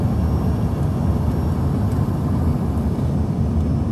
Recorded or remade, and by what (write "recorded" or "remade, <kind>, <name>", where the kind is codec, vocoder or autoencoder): recorded